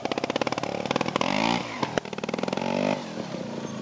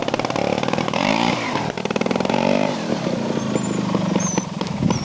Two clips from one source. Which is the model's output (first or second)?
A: second